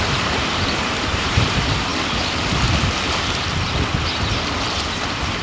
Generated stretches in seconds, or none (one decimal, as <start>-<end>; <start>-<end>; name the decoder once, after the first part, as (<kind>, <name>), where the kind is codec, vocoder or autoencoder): 0.0-1.9 (vocoder, BigVGAN v2)